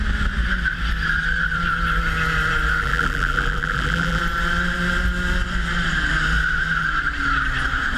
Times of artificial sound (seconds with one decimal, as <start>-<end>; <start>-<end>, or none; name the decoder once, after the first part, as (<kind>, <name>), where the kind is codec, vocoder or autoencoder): 2.8-4.2 (vocoder, BigVGAN v2)

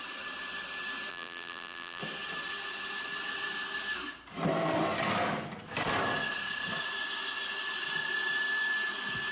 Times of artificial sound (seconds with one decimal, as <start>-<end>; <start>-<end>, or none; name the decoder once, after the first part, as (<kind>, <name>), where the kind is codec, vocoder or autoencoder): 1.1-2.0 (vocoder, BigVGAN v2)

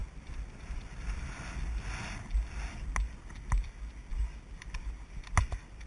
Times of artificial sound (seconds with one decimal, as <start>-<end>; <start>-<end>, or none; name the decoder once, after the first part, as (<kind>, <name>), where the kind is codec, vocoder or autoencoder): 0.0-1.5 (vocoder, BigVGAN v2)

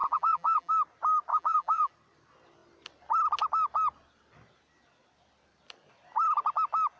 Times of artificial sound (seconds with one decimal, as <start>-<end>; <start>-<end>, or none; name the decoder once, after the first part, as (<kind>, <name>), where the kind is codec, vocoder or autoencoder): 0.0-0.7 (vocoder, BigVGAN v2); 1.3-1.9

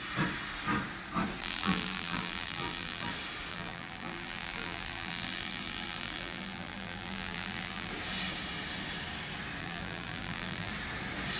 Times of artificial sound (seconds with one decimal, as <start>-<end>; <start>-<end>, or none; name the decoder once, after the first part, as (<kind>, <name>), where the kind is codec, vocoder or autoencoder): 1.4-3.1 (vocoder, BigVGAN v2); 3.5-7.9; 9.6-10.7

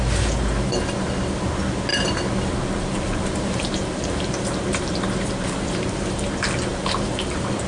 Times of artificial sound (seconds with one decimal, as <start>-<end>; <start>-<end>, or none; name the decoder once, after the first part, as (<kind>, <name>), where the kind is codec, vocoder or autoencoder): 1.9-6.3 (vocoder, BigVGAN v2); 6.7-7.7